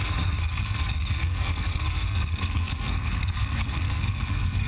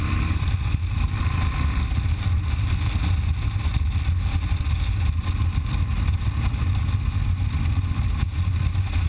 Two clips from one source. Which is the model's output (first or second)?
first